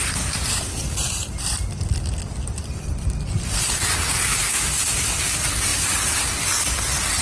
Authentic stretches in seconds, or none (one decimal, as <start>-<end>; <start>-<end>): 0.0-7.2